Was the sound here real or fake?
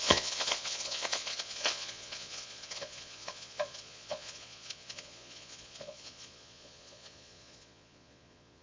fake